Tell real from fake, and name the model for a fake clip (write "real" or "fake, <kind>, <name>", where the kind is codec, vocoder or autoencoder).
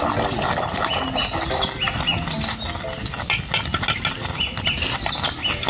real